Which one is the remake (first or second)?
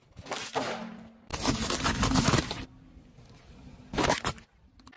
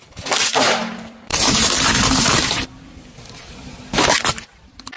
second